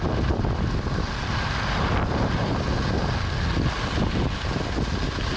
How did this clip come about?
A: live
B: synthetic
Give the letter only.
A